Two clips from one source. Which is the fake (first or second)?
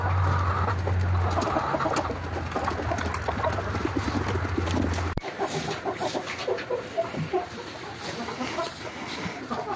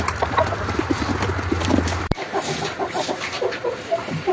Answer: second